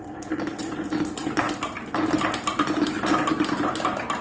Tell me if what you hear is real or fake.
real